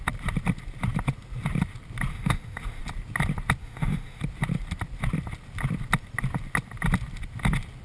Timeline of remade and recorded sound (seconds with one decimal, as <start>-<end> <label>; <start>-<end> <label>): 0.0-2.1 recorded; 2.1-2.8 remade; 2.8-3.6 recorded; 3.6-4.2 remade; 4.2-7.8 recorded